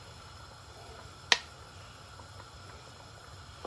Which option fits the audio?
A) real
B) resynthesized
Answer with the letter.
A